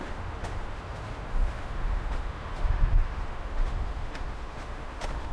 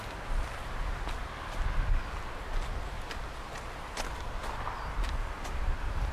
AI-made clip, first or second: first